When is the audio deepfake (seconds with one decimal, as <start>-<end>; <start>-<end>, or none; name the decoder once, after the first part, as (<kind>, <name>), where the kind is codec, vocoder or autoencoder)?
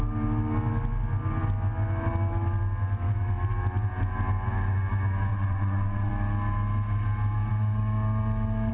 5.3-6.1 (vocoder, WaveNeXt)